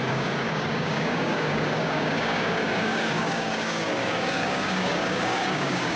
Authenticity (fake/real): fake